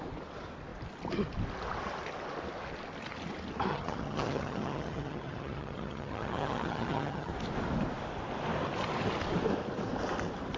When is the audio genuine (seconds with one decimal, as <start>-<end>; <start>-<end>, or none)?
0.0-3.7; 7.3-10.6